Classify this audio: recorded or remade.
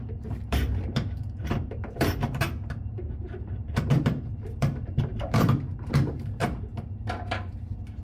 remade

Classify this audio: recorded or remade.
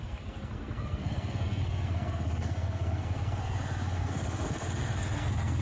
remade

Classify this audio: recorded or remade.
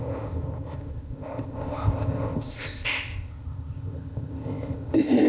remade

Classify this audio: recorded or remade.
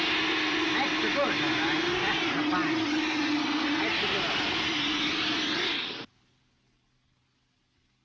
recorded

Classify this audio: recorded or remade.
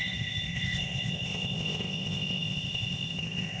remade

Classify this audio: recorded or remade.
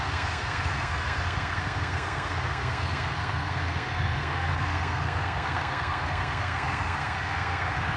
remade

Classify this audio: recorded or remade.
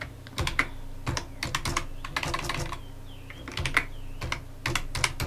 recorded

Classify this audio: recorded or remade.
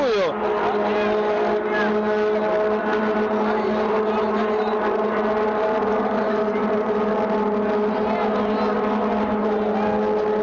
recorded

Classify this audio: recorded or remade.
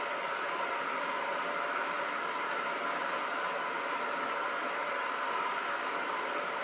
recorded